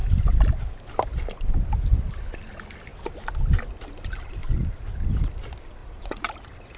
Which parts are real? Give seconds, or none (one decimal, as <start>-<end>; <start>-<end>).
0.0-5.8; 6.3-6.8